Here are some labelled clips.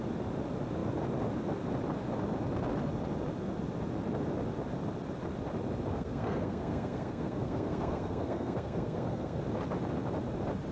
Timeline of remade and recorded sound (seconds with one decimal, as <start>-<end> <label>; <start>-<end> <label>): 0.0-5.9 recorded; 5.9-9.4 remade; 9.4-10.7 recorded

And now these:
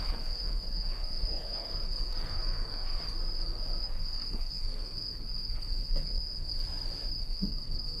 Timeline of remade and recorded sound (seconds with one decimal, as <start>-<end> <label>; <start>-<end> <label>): 0.0-3.0 remade; 3.0-3.8 recorded; 3.8-6.5 remade; 6.5-7.2 recorded; 7.2-8.0 remade

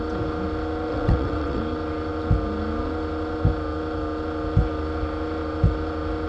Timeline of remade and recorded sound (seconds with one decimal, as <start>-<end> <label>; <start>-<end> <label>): 0.0-0.9 recorded; 0.9-1.6 remade; 1.6-6.3 recorded

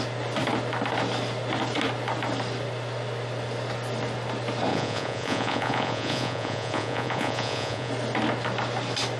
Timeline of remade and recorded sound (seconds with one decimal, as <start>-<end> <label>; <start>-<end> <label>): 0.0-4.7 recorded; 4.7-7.9 remade; 7.9-9.2 recorded

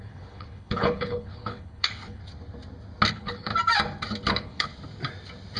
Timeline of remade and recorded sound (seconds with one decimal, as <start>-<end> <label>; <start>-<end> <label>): 0.0-2.2 remade; 2.2-3.1 recorded; 3.1-3.5 remade; 3.5-4.3 recorded; 4.3-4.7 remade; 4.7-5.6 recorded

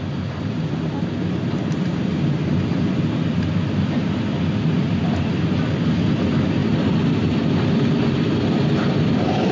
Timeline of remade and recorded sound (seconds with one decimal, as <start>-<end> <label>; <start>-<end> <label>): 0.0-6.6 recorded; 6.6-9.5 remade

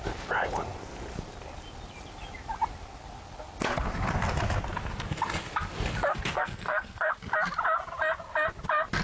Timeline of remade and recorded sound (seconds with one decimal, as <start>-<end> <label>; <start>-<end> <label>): 0.0-6.1 recorded; 6.1-7.1 remade; 7.1-9.0 recorded

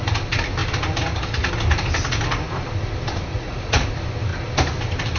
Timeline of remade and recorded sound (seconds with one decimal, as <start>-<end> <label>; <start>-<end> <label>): 0.0-3.3 recorded; 3.3-3.9 remade; 3.9-5.2 recorded